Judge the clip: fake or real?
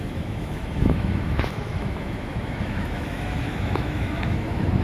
fake